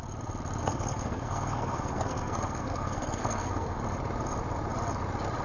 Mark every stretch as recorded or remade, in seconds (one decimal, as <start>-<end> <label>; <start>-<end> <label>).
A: 0.0-0.6 recorded; 0.6-3.8 remade; 3.8-5.4 recorded